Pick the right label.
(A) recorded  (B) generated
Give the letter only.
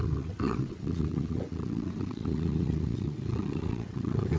B